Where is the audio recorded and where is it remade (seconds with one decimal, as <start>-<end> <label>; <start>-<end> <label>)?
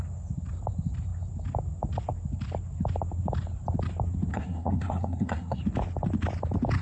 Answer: 0.0-4.3 recorded; 4.3-5.6 remade; 5.6-6.8 recorded